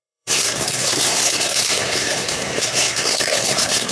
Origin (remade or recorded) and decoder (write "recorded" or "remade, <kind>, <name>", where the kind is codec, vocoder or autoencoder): remade, codec, SNAC